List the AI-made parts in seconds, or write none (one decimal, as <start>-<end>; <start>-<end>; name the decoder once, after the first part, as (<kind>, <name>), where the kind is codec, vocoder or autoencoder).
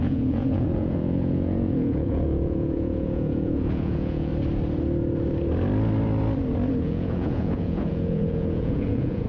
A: 0.0-4.3 (vocoder, Vocos); 6.8-9.3